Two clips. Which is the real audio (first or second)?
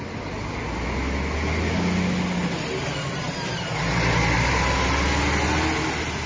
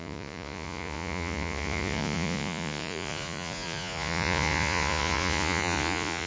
first